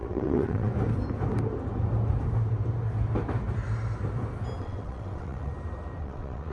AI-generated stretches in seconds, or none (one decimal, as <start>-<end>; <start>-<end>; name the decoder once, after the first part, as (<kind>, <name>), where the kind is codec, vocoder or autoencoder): 0.0-0.7 (vocoder, WaveNeXt); 4.6-5.5; 6.0-6.5